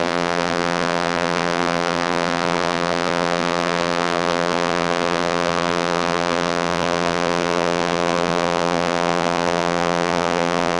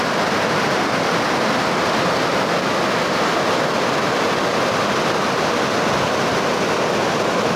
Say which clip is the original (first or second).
second